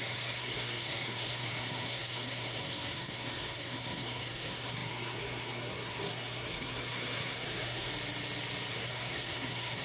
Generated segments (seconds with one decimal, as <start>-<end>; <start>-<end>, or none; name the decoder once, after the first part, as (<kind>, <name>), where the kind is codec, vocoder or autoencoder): 0.0-7.9 (codec, SNAC); 8.7-9.8